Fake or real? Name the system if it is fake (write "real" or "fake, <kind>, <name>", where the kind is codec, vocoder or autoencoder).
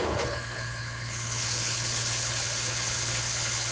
fake, codec, HILCodec